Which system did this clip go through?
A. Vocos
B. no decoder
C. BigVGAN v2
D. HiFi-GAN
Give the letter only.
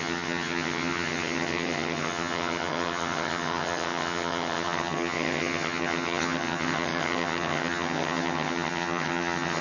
D